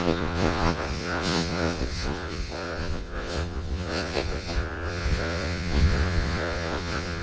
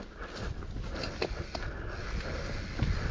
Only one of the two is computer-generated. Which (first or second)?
first